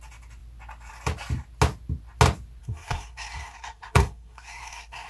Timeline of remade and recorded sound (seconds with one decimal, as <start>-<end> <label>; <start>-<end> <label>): 0.0-2.6 recorded; 2.6-5.1 remade